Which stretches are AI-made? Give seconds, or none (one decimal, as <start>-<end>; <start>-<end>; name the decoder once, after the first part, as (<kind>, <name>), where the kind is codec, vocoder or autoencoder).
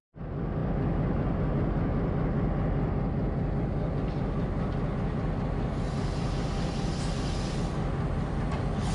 none